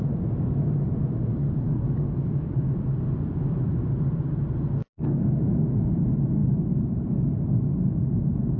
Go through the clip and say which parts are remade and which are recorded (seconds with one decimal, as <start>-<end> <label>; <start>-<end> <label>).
0.0-1.4 recorded; 1.4-2.6 remade; 2.6-4.8 recorded; 4.8-5.9 remade; 5.9-6.4 recorded; 6.4-7.8 remade; 7.8-8.6 recorded